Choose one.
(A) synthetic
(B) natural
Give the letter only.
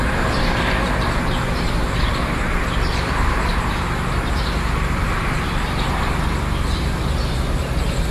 A